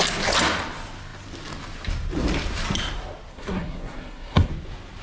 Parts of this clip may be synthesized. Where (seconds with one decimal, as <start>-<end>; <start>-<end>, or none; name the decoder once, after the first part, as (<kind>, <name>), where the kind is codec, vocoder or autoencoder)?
3.3-4.5 (codec, SNAC)